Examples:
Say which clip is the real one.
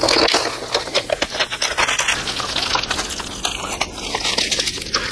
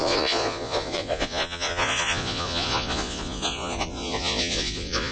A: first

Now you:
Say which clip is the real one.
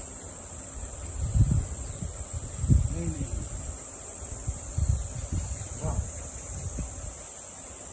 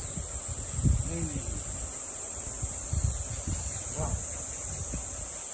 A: second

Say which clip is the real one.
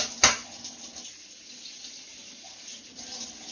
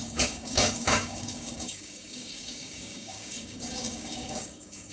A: first